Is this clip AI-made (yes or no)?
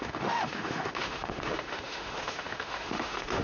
yes